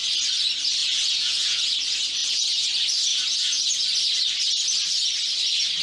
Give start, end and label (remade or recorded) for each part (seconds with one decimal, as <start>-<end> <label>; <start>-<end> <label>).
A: 0.0-0.8 recorded; 0.8-1.7 remade; 1.7-2.2 recorded; 2.2-2.7 remade; 2.7-3.1 recorded; 3.1-3.7 remade; 3.7-5.8 recorded